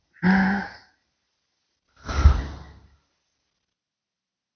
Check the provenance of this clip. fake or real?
real